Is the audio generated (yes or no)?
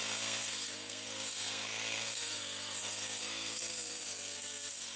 yes